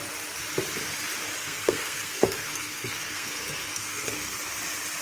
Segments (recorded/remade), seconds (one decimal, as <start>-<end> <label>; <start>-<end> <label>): 0.0-1.4 recorded; 1.4-4.4 remade; 4.4-5.0 recorded